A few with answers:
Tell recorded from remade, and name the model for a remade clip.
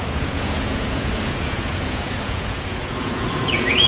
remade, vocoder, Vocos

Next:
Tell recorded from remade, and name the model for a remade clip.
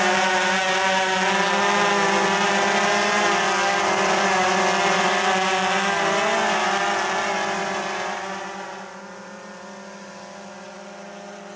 recorded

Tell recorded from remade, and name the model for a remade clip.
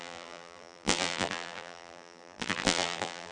remade, vocoder, BigVGAN v2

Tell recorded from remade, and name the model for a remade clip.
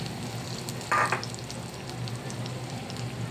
recorded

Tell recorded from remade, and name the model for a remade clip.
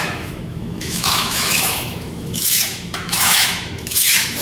remade, autoencoder, DAC-VAE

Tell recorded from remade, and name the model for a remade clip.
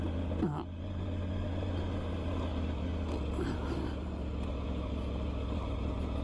recorded